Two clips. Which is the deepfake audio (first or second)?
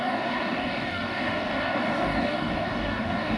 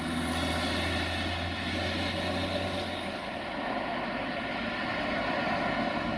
first